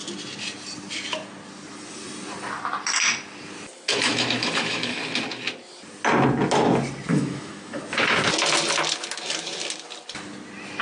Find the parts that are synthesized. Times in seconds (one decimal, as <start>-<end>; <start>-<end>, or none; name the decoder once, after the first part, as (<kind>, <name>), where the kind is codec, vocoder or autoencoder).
3.9-5.0 (autoencoder, DAC-VAE); 7.1-7.8